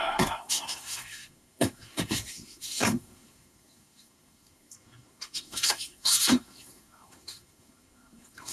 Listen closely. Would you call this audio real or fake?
fake